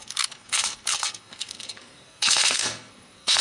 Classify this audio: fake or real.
fake